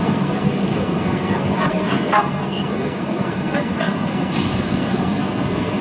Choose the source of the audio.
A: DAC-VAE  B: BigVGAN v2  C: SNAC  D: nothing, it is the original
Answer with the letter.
C